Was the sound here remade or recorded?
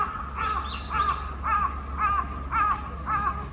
recorded